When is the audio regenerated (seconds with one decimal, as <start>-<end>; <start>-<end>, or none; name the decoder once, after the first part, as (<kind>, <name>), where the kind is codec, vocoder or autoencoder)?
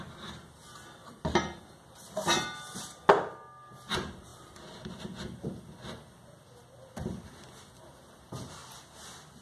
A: none